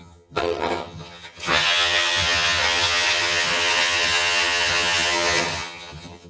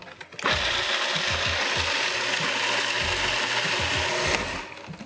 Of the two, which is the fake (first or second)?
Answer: first